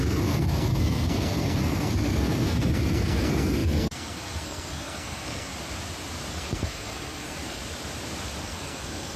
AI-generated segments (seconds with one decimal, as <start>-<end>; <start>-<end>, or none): 0.0-5.5; 6.3-7.6; 8.4-9.2